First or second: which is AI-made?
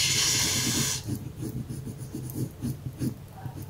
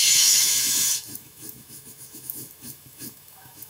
second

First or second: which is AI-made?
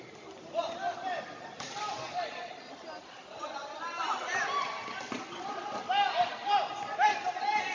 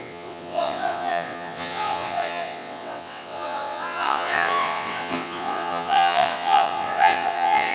second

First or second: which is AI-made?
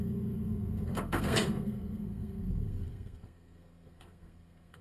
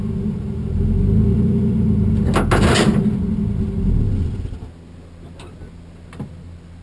first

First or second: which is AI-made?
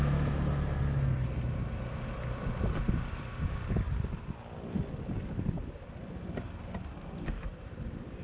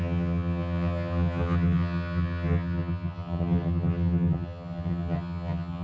second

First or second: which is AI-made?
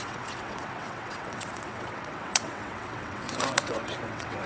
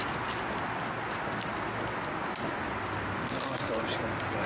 first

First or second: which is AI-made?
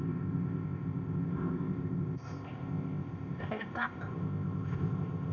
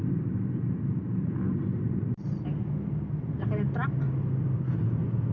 first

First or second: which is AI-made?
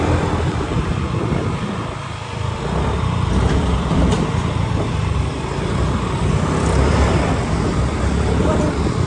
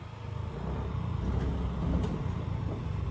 first